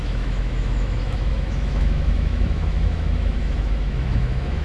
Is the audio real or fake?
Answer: fake